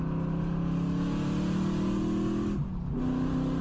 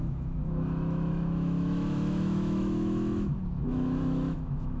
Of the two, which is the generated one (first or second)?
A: second